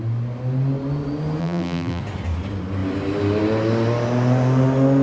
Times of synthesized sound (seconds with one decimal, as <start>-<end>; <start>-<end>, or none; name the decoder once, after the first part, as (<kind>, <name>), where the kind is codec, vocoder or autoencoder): 1.4-2.0 (vocoder, BigVGAN v2)